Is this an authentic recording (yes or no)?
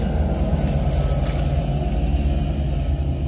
yes